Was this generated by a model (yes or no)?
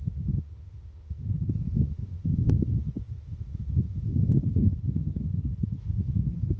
yes